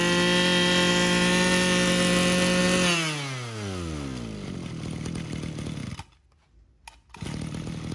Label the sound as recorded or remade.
recorded